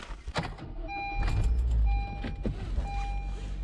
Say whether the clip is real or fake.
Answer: real